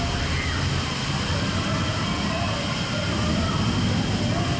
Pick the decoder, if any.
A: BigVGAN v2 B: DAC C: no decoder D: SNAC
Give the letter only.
C